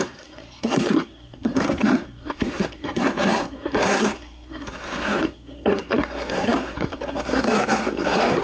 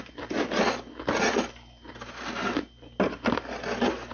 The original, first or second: second